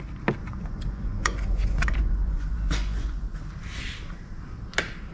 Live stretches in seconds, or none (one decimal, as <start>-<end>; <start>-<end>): 0.0-0.4; 3.5-5.1